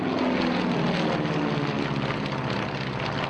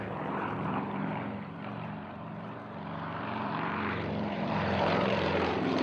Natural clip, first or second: first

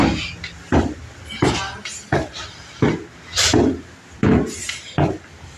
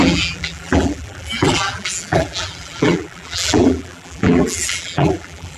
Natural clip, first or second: first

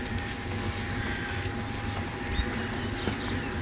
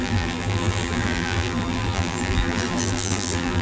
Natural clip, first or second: first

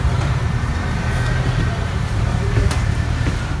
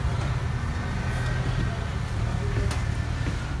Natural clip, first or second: second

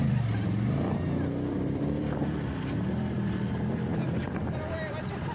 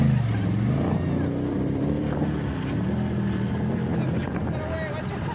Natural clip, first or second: second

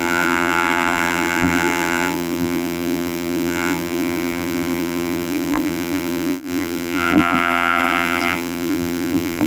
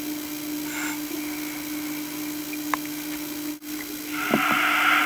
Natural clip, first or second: second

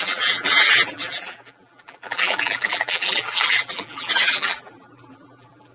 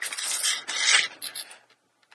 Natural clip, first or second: second